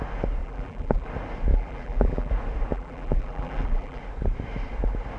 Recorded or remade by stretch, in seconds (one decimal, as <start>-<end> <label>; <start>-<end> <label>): 0.0-0.4 recorded; 0.4-1.1 remade; 1.1-1.5 recorded; 1.5-2.3 remade; 2.3-2.7 recorded; 2.7-4.0 remade; 4.0-5.2 recorded